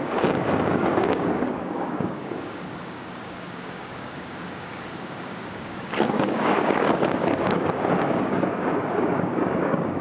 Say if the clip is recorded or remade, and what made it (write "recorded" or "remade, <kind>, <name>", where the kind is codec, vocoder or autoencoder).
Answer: remade, codec, DAC